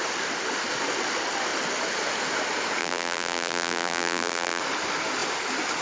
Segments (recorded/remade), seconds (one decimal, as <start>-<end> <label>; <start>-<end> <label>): 0.0-2.8 recorded; 2.8-4.6 remade; 4.6-5.8 recorded